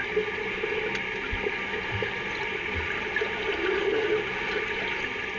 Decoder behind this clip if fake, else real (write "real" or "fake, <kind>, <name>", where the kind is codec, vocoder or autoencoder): real